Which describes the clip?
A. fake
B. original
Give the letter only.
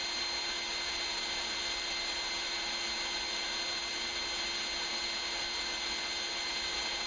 B